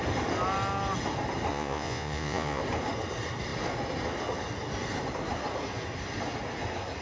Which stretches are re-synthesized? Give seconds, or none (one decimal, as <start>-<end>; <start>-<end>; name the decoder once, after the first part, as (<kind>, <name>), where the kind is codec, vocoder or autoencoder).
1.5-2.6 (vocoder, Vocos)